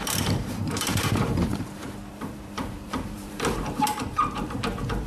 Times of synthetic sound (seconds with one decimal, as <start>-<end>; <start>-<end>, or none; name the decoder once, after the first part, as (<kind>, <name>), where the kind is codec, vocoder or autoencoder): 0.0-1.5 (vocoder, BigVGAN v2); 2.1-5.1